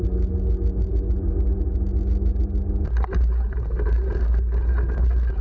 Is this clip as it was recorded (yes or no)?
yes